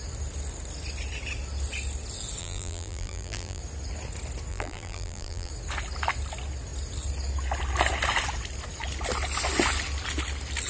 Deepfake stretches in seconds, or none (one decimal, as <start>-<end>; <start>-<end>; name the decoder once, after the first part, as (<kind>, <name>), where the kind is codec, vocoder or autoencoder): 2.4-3.6 (vocoder, BigVGAN v2); 4.5-5.5